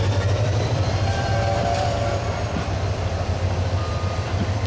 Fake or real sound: fake